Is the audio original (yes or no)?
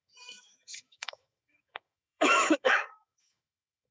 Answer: no